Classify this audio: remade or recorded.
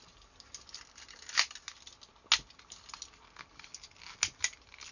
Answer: recorded